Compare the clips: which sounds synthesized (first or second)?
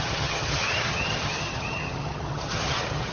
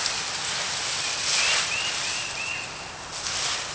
first